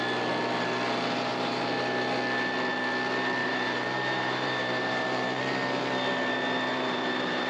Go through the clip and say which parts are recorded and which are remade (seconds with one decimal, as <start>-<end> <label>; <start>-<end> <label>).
0.0-1.3 recorded; 1.3-1.8 remade; 1.8-3.4 recorded; 3.4-5.4 remade; 5.4-6.7 recorded; 6.7-7.5 remade